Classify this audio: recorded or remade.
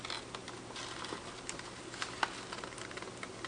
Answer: recorded